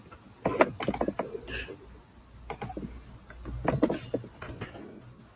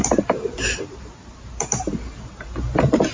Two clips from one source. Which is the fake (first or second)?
second